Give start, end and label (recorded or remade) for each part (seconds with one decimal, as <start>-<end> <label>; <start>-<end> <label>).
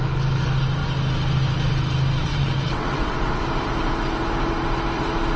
0.0-2.3 recorded; 2.3-3.4 remade; 3.4-5.4 recorded